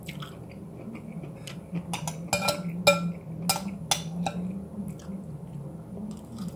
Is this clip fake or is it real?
real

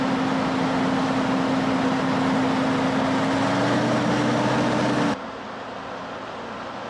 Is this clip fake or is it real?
real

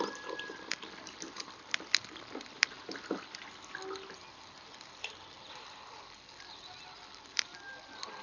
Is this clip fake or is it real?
real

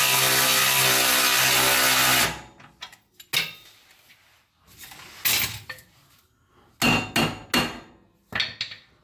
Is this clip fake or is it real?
real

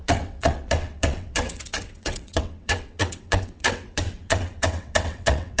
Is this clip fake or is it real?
fake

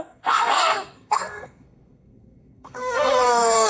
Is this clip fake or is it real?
fake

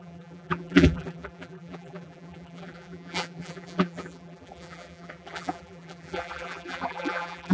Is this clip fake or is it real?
fake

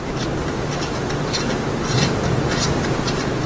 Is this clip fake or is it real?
real